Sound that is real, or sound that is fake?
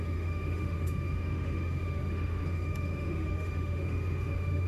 fake